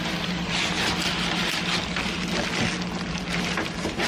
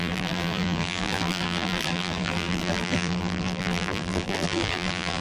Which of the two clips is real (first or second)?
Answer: first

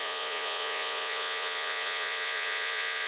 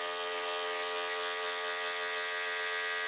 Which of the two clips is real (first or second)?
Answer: second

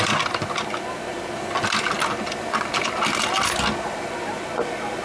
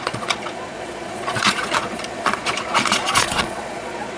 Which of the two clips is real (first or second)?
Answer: first